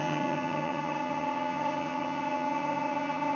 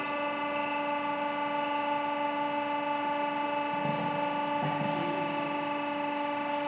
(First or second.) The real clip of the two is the second